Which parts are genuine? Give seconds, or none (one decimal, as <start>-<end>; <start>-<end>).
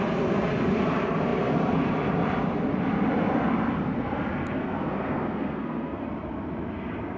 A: 0.0-4.6; 6.0-7.2